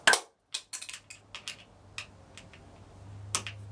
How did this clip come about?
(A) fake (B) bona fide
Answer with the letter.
B